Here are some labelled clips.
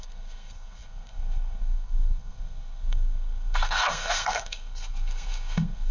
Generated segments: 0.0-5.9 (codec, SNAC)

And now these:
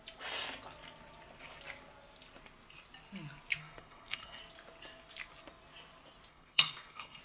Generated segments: 3.6-4.4 (codec, SNAC); 6.3-7.2

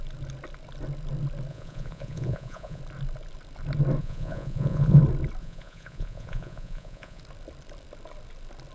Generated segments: 1.5-2.8 (vocoder, Vocos); 4.0-5.0; 5.4-7.2